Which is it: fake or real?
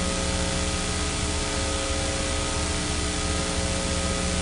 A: real